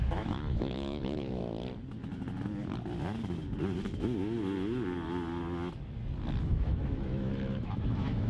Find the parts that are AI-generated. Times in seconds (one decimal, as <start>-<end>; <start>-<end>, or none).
0.0-1.4; 6.4-8.3